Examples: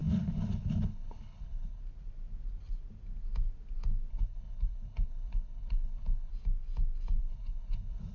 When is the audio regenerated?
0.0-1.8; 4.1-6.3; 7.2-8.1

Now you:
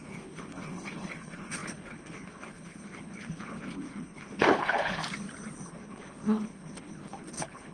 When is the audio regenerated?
0.0-5.0; 5.7-7.7

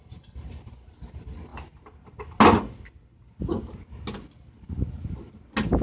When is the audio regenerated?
none

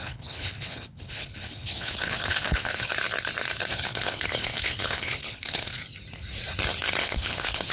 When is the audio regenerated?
0.0-2.9; 3.7-5.8; 7.0-7.7

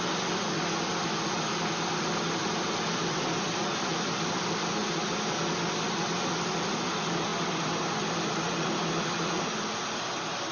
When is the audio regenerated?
none

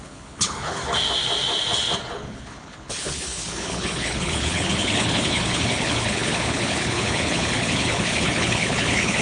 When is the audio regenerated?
0.0-0.8; 2.1-9.2

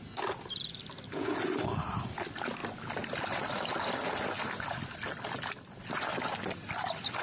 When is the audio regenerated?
none

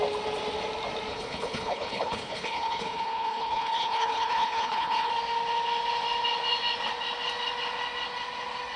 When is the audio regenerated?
1.1-5.1